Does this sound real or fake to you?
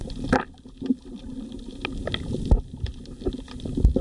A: real